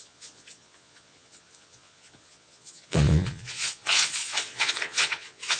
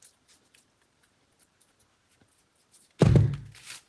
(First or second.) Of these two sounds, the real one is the second